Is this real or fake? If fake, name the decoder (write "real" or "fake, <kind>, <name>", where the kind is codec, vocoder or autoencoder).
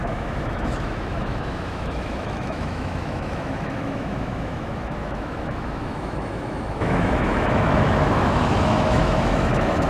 fake, autoencoder, DAC-VAE